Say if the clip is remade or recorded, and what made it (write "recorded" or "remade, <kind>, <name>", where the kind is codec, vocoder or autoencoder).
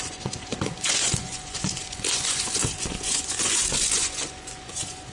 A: remade, vocoder, Vocos